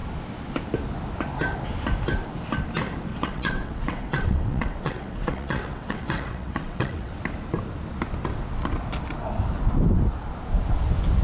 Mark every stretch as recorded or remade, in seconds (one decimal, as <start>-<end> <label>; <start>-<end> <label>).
0.0-3.1 recorded; 3.1-7.2 remade; 7.2-11.2 recorded